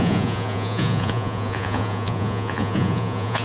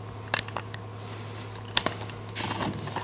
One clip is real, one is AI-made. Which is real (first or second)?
second